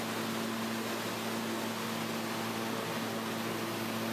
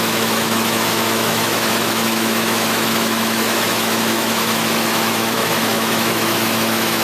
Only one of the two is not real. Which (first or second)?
second